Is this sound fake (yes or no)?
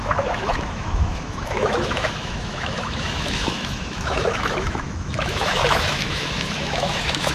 yes